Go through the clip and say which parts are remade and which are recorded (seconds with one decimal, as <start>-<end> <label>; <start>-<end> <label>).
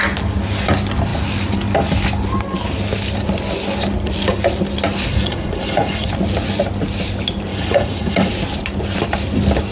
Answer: 0.0-5.1 recorded; 5.1-6.1 remade; 6.1-7.5 recorded; 7.5-8.3 remade; 8.3-9.7 recorded